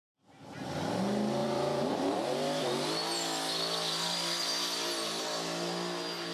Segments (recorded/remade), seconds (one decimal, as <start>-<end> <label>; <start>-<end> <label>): 0.0-1.4 recorded; 1.4-5.2 remade; 5.2-6.3 recorded